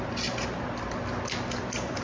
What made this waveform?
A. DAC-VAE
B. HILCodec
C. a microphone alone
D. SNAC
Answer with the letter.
C